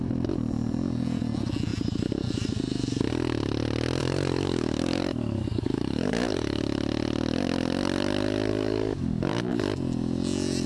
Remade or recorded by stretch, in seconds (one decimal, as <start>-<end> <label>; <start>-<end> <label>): 0.0-4.0 recorded; 4.0-6.6 remade; 6.6-8.5 recorded; 8.5-9.5 remade; 9.5-10.7 recorded